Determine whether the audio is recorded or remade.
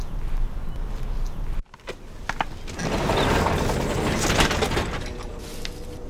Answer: recorded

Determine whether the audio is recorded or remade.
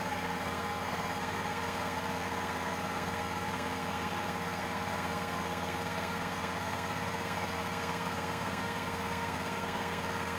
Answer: remade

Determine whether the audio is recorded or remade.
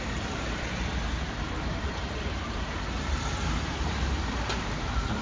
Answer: remade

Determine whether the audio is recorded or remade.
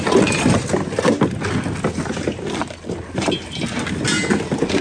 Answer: recorded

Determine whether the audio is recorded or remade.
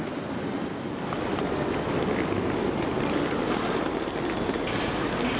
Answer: recorded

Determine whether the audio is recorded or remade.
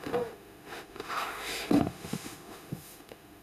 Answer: remade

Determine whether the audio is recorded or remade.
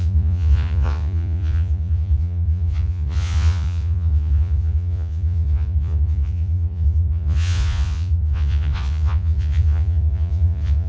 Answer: remade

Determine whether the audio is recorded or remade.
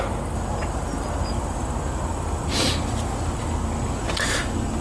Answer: recorded